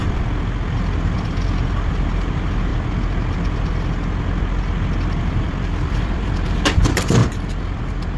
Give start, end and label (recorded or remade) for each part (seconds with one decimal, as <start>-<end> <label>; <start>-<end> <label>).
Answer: 0.0-2.7 remade; 2.7-5.2 recorded; 5.2-7.2 remade; 7.2-8.2 recorded